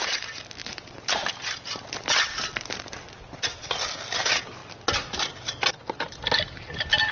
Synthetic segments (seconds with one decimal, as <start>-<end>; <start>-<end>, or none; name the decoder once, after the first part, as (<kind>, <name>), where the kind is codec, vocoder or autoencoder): none